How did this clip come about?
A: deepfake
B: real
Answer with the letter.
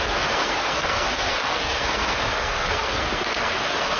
A